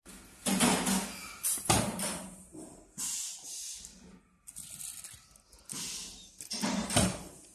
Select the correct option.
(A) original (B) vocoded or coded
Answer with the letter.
A